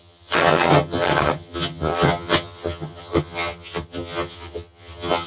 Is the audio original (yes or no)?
no